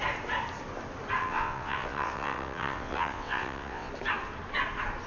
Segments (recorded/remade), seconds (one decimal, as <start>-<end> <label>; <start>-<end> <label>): 0.0-1.2 recorded; 1.2-3.9 remade; 3.9-5.1 recorded